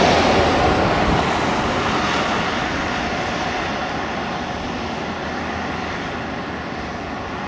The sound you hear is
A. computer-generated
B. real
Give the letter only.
B